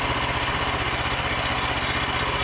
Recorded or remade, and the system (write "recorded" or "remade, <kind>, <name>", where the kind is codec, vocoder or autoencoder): recorded